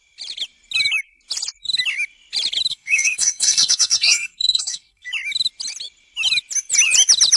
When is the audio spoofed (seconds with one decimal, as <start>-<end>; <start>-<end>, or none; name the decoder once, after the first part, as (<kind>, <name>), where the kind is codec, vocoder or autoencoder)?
2.7-5.1 (codec, SNAC)

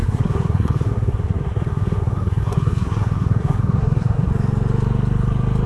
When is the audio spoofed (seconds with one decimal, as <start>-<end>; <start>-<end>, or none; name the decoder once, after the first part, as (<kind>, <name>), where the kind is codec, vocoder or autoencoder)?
0.0-4.3 (codec, SNAC)

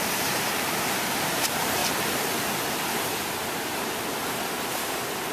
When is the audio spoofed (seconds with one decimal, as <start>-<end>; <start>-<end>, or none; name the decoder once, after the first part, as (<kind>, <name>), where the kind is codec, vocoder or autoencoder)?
0.0-1.8 (vocoder, BigVGAN v2); 3.5-4.2

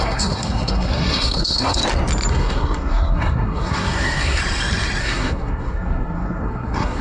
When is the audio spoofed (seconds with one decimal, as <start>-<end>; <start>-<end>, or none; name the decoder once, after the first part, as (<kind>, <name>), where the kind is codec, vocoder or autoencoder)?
0.0-1.8 (codec, SNAC); 2.3-4.4; 5.0-7.0